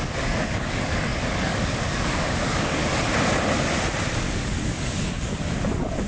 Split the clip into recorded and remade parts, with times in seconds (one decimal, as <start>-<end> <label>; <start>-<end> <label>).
0.0-2.8 remade; 2.8-4.3 recorded; 4.3-6.1 remade